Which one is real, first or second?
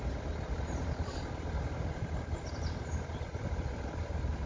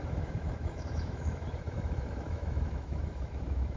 first